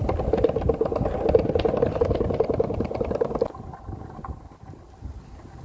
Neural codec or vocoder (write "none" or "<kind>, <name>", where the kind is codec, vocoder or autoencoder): none